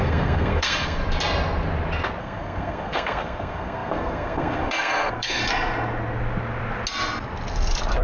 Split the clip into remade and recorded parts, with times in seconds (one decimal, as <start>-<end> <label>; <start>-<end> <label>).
0.0-1.0 remade; 1.0-2.2 recorded; 2.2-5.4 remade; 5.4-8.0 recorded